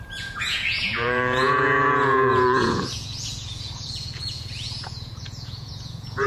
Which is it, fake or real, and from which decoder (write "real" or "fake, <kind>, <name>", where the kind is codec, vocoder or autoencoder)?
fake, vocoder, Vocos